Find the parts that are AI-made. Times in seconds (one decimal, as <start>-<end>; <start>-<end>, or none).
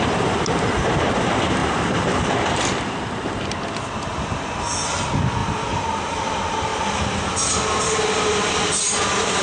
1.6-2.6; 5.4-6.2